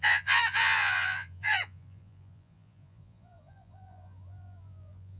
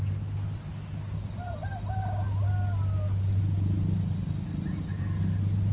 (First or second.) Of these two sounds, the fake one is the first